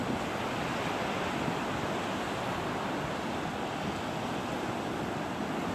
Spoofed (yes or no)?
no